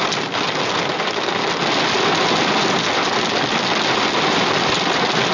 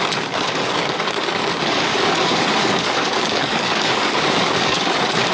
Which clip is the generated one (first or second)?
second